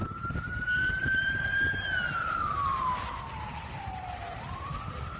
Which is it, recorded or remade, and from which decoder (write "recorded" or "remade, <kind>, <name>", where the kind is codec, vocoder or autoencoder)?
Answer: remade, vocoder, BigVGAN v2